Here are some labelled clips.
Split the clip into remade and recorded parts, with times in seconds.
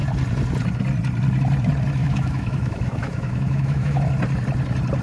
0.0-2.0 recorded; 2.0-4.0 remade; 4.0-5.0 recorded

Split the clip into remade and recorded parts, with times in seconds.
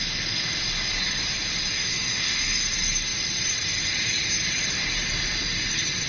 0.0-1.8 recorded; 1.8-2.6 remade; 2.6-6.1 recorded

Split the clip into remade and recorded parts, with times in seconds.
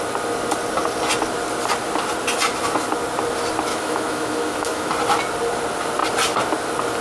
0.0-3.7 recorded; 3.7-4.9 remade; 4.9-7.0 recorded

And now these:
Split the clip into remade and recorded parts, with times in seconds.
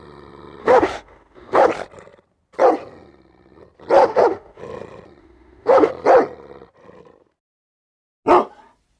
0.0-0.6 recorded; 0.6-1.7 remade; 1.7-4.0 recorded; 4.0-4.6 remade; 4.6-5.2 recorded; 5.2-5.9 remade; 5.9-9.0 recorded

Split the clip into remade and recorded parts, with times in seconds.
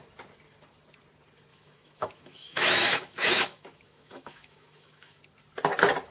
0.0-1.5 recorded; 1.5-5.2 remade; 5.2-6.1 recorded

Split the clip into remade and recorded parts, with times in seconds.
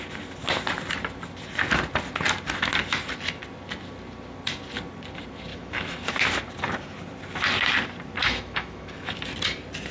0.0-5.5 recorded; 5.5-6.1 remade; 6.1-8.2 recorded; 8.2-9.1 remade; 9.1-9.9 recorded